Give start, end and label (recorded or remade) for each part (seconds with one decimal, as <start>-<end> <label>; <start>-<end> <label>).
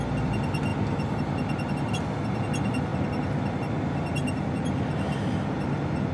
0.0-6.1 recorded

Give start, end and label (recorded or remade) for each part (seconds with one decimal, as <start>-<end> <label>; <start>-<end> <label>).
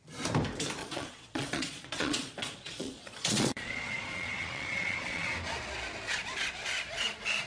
0.0-0.8 recorded; 0.8-5.3 remade; 5.3-7.5 recorded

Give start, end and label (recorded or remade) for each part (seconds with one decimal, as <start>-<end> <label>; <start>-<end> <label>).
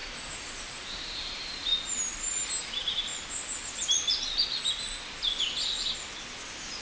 0.0-0.6 recorded; 0.6-1.7 remade; 1.7-2.3 recorded; 2.3-3.1 remade; 3.1-6.8 recorded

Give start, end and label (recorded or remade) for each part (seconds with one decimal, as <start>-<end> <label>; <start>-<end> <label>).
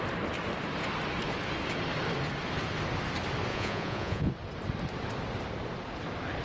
0.0-3.5 recorded; 3.5-4.3 remade; 4.3-6.4 recorded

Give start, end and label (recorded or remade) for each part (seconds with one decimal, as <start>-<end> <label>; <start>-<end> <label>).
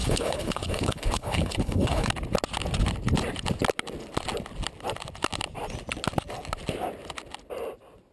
0.0-2.1 remade; 2.1-8.1 recorded